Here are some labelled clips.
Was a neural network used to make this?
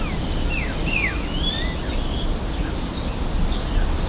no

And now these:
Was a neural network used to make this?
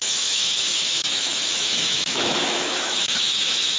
yes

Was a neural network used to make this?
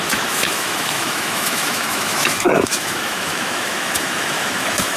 yes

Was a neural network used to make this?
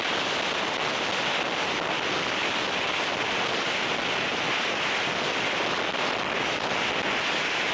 no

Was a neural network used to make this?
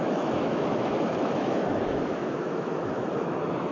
yes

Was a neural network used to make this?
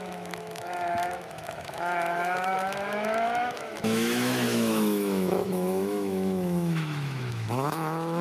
yes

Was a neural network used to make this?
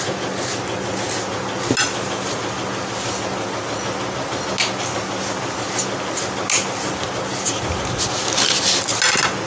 no